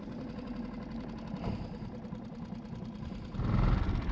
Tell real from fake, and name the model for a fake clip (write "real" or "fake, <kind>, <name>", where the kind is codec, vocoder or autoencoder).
fake, vocoder, BigVGAN v2